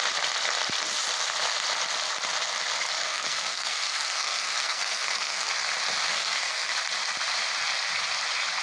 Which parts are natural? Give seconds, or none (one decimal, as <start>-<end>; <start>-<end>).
0.0-3.0; 5.5-6.1; 6.7-8.6